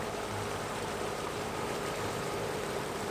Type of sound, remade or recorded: remade